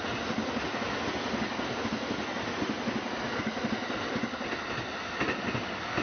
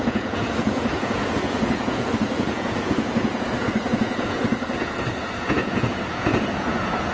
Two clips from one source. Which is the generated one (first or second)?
second